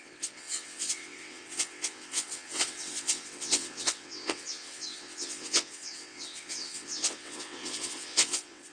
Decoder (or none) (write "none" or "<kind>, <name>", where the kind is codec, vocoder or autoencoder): vocoder, WaveNeXt